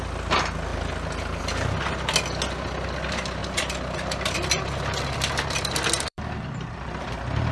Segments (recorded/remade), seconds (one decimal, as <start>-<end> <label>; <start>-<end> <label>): 0.0-3.4 recorded; 3.4-7.5 remade